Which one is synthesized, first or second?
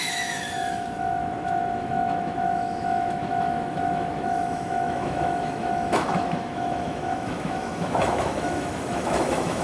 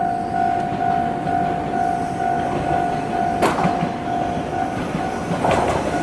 first